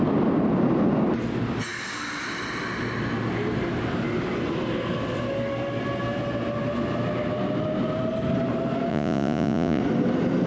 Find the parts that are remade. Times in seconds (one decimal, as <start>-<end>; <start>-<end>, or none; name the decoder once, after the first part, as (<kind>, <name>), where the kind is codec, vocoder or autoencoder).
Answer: 8.9-9.8 (vocoder, Vocos)